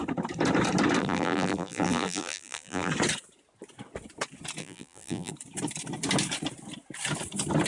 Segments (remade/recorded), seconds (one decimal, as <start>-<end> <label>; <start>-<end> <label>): 0.0-1.0 recorded; 1.0-2.9 remade; 2.9-4.6 recorded; 4.6-5.3 remade; 5.3-7.7 recorded